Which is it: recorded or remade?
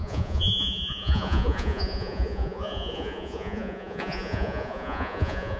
remade